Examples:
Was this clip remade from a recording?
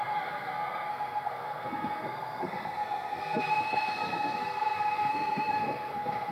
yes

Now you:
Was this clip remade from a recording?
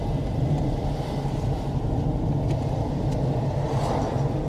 no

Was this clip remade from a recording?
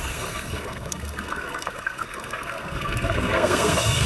yes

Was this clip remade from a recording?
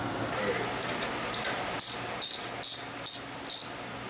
no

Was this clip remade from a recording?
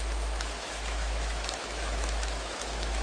yes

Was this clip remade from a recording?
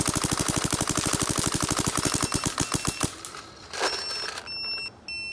no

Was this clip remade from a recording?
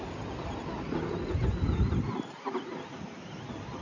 no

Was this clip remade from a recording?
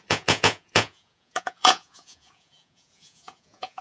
yes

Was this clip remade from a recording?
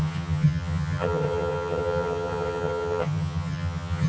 yes